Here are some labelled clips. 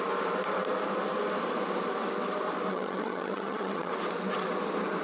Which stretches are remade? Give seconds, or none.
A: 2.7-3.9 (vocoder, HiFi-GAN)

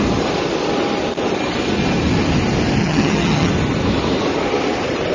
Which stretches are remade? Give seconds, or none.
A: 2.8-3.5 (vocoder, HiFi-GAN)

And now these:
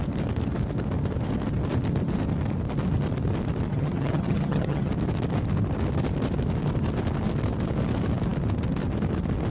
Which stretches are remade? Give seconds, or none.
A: 3.7-4.9 (vocoder, HiFi-GAN)

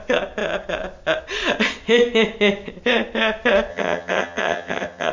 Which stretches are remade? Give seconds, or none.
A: 3.7-5.1 (vocoder, HiFi-GAN)

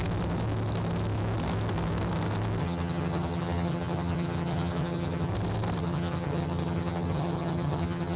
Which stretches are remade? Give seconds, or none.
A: 2.6-5.3 (vocoder, HiFi-GAN); 5.8-8.2

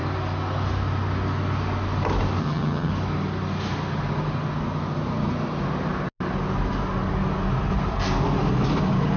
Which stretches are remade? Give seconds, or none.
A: 2.4-2.9 (vocoder, HiFi-GAN)

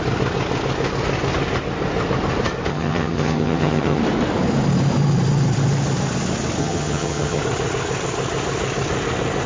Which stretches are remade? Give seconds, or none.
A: 2.7-4.0 (vocoder, HiFi-GAN); 6.6-7.4

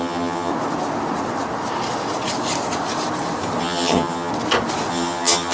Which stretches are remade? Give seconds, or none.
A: 0.0-0.5 (vocoder, HiFi-GAN); 3.6-4.3; 4.9-5.5